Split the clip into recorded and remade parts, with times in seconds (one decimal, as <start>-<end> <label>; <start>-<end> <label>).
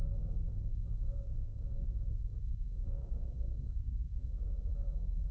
0.0-4.7 remade; 4.7-5.3 recorded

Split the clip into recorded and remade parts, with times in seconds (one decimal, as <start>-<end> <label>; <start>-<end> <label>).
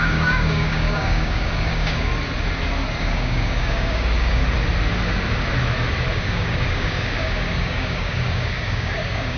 0.0-2.1 remade; 2.1-3.0 recorded; 3.0-4.4 remade; 4.4-6.1 recorded; 6.1-9.4 remade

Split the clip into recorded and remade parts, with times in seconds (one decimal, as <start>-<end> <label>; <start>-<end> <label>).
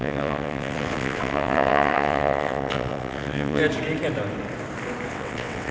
0.0-3.6 remade; 3.6-5.1 recorded; 5.1-5.7 remade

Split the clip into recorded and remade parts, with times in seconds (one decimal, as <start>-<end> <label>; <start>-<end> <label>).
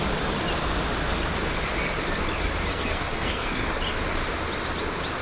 0.0-2.7 recorded; 2.7-3.7 remade; 3.7-5.2 recorded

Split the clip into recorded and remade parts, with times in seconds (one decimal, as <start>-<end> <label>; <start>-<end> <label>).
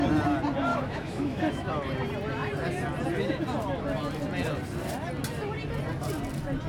0.0-0.7 recorded; 0.7-1.7 remade; 1.7-6.7 recorded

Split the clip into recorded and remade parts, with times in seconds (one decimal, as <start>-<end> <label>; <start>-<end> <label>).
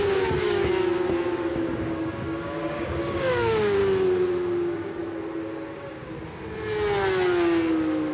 0.0-0.7 remade; 0.7-1.5 recorded; 1.5-3.8 remade; 3.8-4.5 recorded; 4.5-5.0 remade; 5.0-8.1 recorded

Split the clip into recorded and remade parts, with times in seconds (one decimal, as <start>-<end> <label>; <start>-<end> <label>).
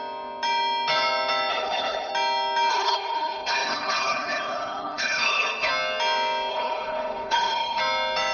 0.0-1.5 recorded; 1.5-2.1 remade; 2.1-2.7 recorded; 2.7-5.7 remade; 5.7-6.5 recorded; 6.5-7.8 remade; 7.8-8.3 recorded